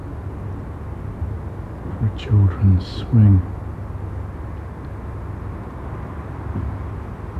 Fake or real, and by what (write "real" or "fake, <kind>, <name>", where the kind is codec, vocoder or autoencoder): real